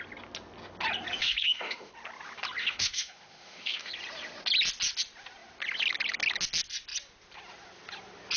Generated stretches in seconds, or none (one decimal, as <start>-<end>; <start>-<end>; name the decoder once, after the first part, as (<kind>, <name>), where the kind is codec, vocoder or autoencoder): 1.2-1.9 (autoencoder, DAC-VAE); 2.6-3.9